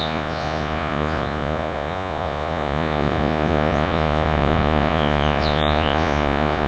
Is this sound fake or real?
fake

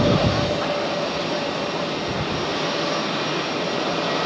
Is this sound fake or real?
real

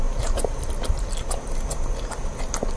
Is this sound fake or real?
real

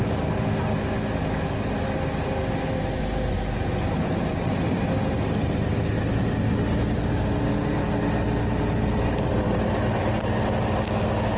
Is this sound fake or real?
real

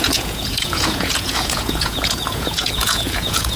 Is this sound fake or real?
fake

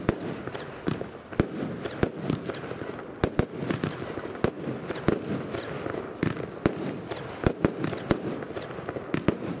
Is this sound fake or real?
real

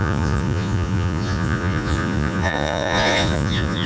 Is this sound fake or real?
fake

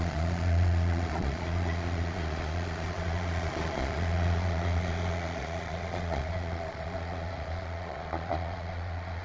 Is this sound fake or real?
fake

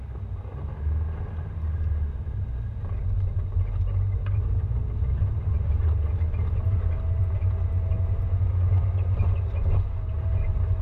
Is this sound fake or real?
real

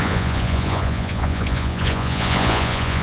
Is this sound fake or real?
fake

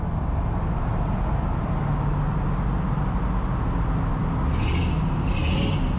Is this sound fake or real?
real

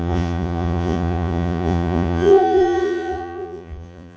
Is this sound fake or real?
fake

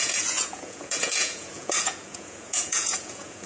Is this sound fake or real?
fake